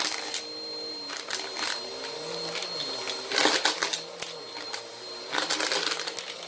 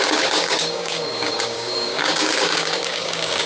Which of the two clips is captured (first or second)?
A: first